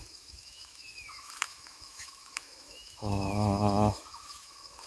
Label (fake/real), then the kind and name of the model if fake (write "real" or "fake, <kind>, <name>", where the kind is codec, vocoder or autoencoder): fake, autoencoder, DAC-VAE